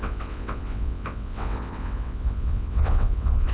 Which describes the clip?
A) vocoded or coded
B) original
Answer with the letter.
A